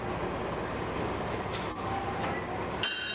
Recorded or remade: recorded